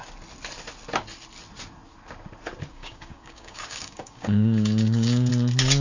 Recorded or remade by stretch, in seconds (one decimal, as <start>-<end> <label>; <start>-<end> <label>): 0.0-2.7 recorded; 2.7-5.3 remade; 5.3-5.8 recorded